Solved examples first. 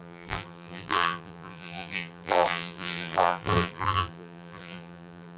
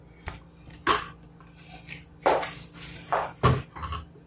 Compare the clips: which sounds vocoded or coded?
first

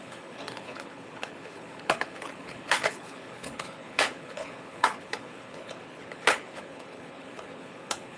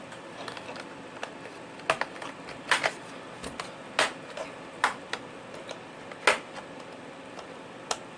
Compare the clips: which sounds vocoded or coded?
first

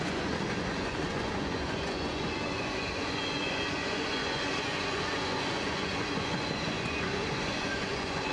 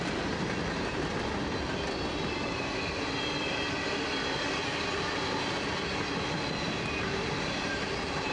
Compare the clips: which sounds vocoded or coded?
first